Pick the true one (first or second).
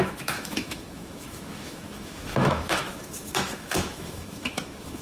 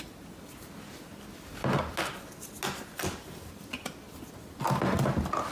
second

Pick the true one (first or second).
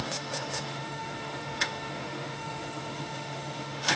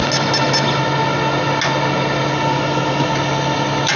second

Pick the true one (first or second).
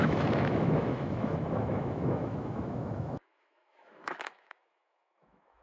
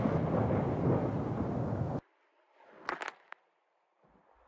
second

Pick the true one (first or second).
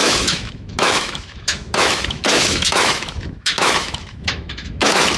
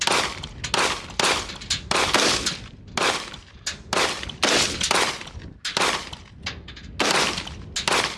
second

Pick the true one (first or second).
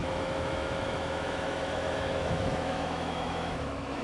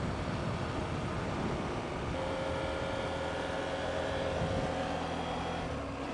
second